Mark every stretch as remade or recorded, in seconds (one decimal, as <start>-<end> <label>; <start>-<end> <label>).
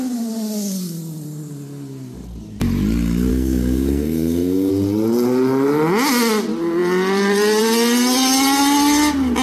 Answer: 0.0-3.3 recorded; 3.3-4.7 remade; 4.7-9.4 recorded